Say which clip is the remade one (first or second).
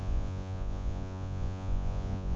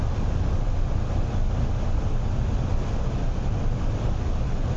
first